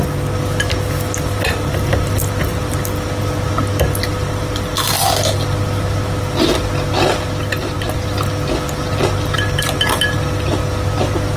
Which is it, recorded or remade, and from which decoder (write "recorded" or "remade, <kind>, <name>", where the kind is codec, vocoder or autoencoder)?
recorded